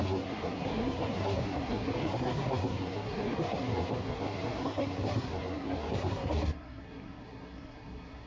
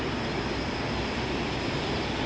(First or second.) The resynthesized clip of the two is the first